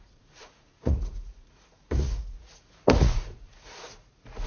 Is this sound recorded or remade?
remade